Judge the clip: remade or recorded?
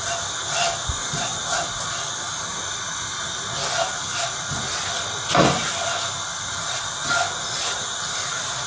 recorded